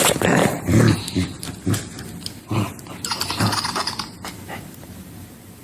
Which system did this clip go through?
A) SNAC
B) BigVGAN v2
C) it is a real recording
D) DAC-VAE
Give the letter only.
C